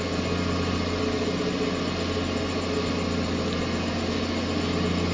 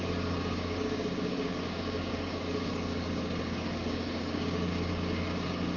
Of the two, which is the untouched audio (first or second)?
first